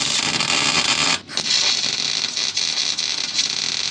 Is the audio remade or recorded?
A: recorded